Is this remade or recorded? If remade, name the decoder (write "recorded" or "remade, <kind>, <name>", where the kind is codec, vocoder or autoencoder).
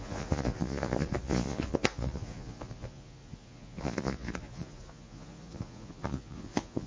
remade, vocoder, Vocos